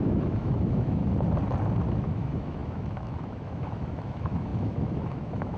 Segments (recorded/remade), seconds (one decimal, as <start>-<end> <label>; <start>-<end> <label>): 0.0-1.0 remade; 1.0-1.9 recorded; 1.9-5.6 remade